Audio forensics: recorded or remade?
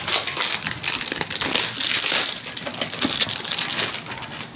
recorded